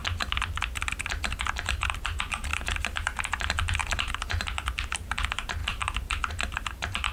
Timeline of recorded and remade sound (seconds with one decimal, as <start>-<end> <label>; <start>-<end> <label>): 0.0-1.6 recorded; 1.6-7.1 remade